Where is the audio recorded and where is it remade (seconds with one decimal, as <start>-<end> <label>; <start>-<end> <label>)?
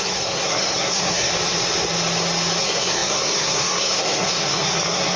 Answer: 0.0-1.3 remade; 1.3-2.6 recorded; 2.6-5.2 remade